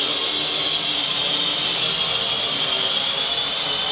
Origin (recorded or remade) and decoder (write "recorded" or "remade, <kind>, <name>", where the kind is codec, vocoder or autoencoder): recorded